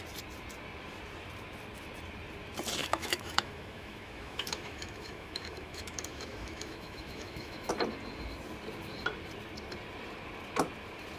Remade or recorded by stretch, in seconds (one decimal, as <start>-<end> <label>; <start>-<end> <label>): 0.0-2.8 recorded; 2.8-7.7 remade; 7.7-11.2 recorded

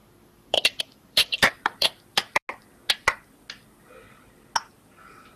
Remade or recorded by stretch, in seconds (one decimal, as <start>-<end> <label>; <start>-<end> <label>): 0.0-2.4 remade; 2.4-5.4 recorded

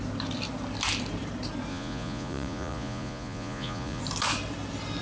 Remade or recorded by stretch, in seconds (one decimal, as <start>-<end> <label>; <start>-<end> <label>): 0.0-1.7 recorded; 1.7-4.0 remade; 4.0-5.0 recorded

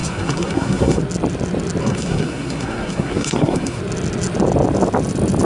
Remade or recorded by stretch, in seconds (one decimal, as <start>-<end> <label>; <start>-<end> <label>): 0.0-1.0 remade; 1.0-1.8 recorded; 1.8-3.8 remade; 3.8-5.4 recorded

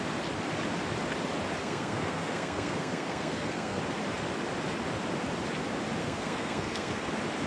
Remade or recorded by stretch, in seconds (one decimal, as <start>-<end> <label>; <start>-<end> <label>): 0.0-1.6 recorded; 1.6-3.8 remade; 3.8-6.0 recorded; 6.0-7.1 remade; 7.1-7.5 recorded

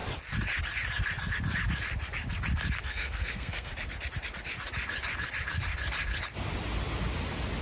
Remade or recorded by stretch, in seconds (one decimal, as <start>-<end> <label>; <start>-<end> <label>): 0.0-2.8 recorded; 2.8-3.7 remade; 3.7-7.6 recorded